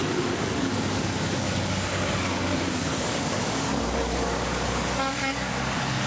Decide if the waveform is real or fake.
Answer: fake